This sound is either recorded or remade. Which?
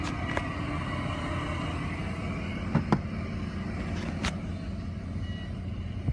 recorded